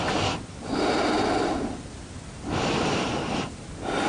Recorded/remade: recorded